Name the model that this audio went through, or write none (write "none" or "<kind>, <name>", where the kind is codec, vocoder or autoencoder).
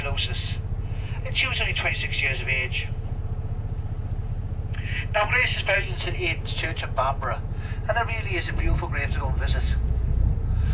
vocoder, Vocos